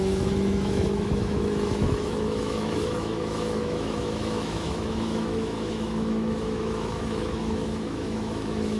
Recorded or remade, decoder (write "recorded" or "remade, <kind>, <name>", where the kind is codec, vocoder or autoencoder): remade, autoencoder, DAC-VAE